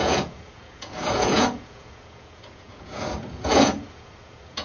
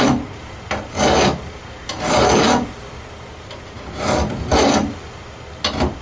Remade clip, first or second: first